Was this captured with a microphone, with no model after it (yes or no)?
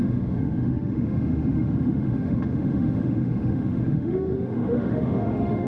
no